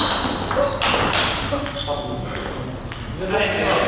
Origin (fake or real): real